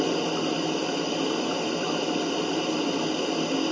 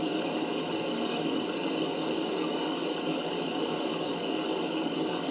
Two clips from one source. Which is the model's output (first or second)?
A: second